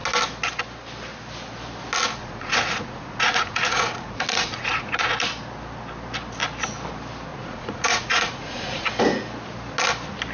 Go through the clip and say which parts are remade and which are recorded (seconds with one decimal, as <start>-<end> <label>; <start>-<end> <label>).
0.0-2.2 recorded; 2.2-5.1 remade; 5.1-7.3 recorded; 7.3-8.9 remade; 8.9-10.3 recorded